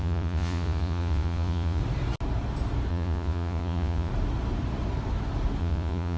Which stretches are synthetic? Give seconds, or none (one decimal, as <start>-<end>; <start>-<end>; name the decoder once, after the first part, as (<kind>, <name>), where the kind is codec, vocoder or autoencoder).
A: 0.0-1.8 (vocoder, Vocos); 2.9-4.1; 5.6-6.2